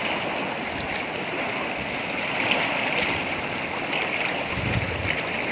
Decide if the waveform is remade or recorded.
recorded